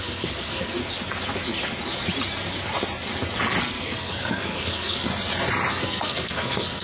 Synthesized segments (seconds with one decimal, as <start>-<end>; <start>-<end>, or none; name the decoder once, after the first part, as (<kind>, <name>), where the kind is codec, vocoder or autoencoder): 0.0-0.8 (codec, SNAC); 3.6-5.1; 5.7-6.8